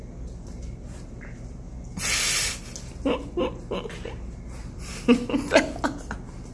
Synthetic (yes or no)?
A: no